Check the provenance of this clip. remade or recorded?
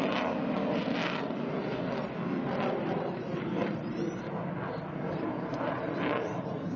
recorded